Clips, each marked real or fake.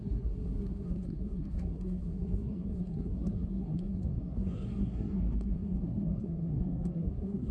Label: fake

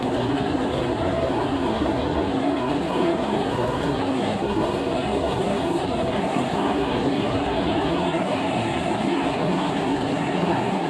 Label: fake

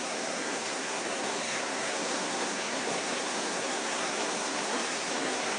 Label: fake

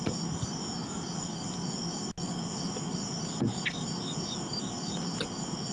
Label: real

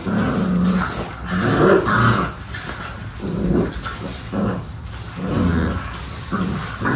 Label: real